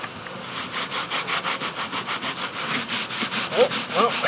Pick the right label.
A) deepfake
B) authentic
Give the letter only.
B